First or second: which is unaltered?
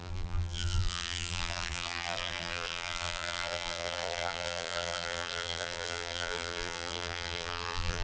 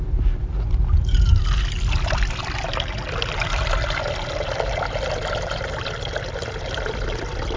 second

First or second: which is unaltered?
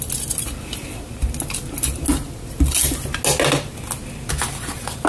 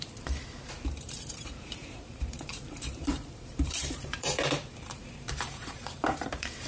first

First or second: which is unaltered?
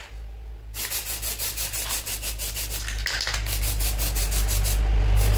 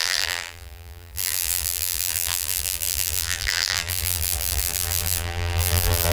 first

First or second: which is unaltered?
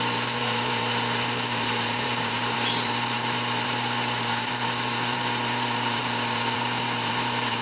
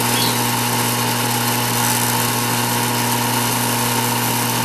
second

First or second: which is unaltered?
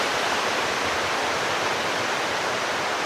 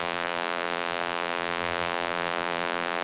first